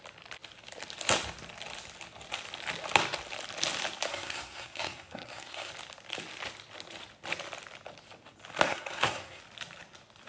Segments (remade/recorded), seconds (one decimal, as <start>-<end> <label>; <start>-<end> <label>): 0.0-4.1 recorded; 4.1-5.7 remade; 5.7-8.7 recorded; 8.7-9.4 remade; 9.4-10.3 recorded